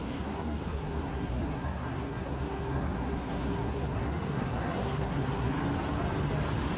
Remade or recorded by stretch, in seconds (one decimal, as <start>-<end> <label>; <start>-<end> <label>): 0.0-5.6 remade; 5.6-6.8 recorded